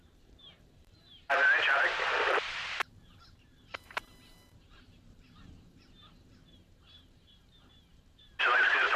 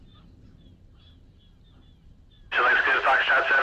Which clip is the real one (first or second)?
second